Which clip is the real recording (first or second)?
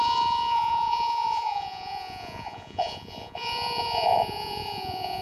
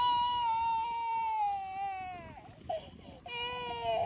second